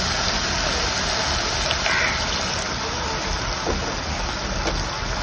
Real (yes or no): yes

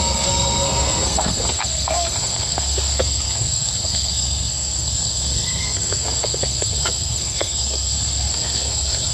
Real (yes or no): no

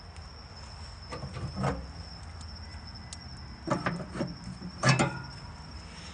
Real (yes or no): yes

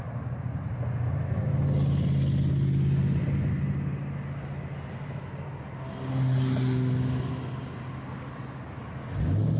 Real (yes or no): yes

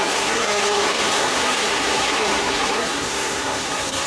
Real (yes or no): no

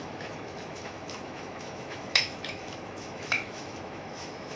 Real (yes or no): no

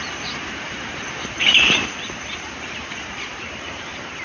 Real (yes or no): no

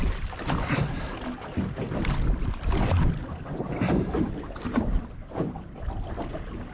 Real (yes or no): yes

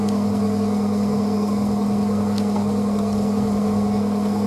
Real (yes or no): no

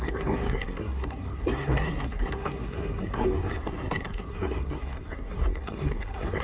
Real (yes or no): no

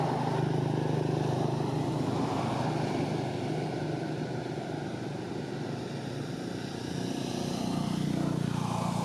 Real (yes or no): yes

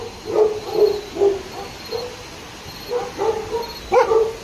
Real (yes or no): yes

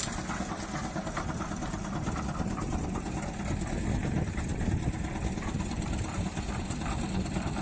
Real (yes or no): yes